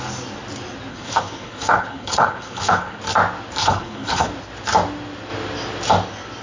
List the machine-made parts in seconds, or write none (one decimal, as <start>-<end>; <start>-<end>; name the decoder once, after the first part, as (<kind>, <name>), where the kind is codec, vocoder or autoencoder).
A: 0.9-3.0 (codec, HILCodec); 3.6-4.3